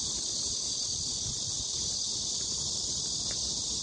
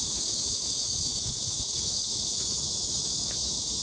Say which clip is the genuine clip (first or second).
first